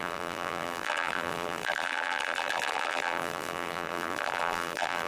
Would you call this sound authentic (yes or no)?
no